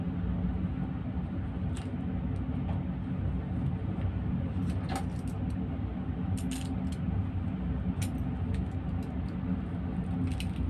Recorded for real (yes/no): yes